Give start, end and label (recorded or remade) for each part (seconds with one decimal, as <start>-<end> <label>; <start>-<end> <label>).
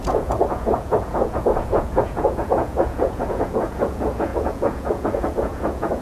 0.0-6.0 remade